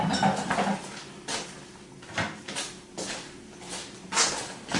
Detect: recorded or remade recorded